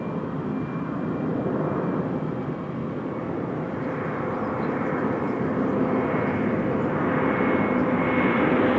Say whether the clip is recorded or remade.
recorded